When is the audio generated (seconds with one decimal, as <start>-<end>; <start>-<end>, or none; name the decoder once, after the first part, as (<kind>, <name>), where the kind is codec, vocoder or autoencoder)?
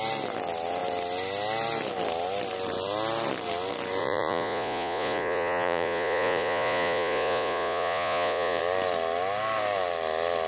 4.0-8.6 (vocoder, Vocos)